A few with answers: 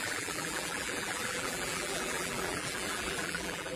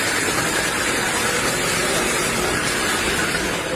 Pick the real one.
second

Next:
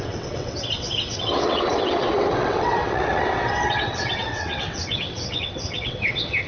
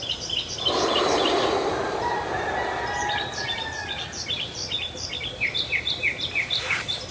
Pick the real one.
second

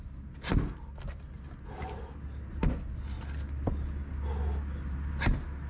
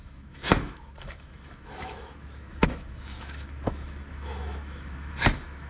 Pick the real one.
first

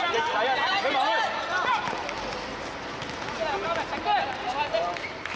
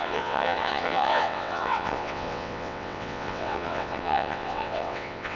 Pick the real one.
first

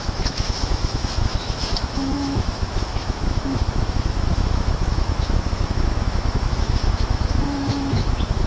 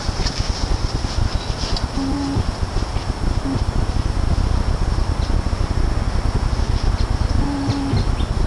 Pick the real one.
second